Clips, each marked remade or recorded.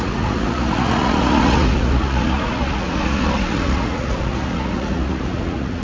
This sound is remade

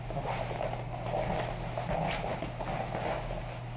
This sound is recorded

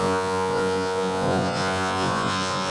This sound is remade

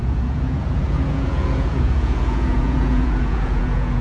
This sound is remade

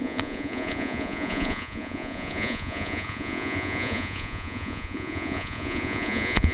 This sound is remade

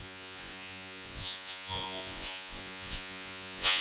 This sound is remade